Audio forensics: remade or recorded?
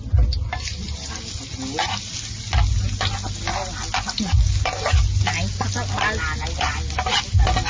recorded